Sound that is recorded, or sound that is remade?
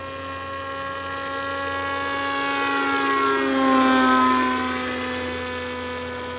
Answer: recorded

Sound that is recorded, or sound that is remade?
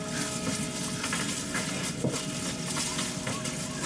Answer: recorded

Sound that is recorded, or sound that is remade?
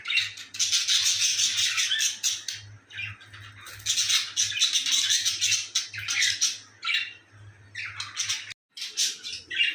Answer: recorded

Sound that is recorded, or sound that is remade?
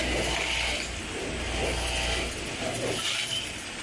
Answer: recorded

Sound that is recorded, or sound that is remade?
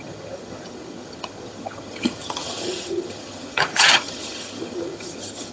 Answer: remade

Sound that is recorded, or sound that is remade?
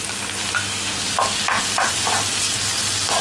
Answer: recorded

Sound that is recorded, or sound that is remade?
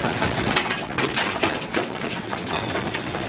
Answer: remade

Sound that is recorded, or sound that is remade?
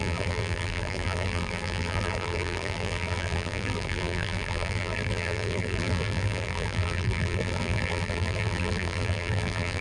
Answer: remade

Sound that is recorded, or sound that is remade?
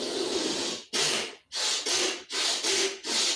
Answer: recorded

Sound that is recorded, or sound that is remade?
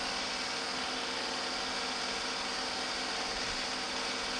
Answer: recorded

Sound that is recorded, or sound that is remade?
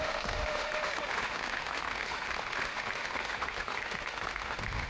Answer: remade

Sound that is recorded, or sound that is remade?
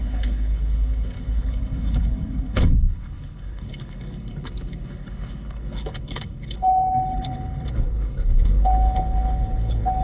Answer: remade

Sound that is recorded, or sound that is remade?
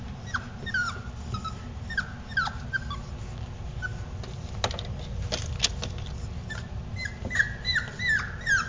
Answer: recorded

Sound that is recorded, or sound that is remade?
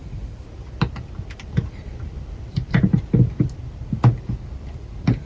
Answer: recorded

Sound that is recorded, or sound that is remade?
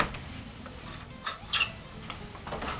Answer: recorded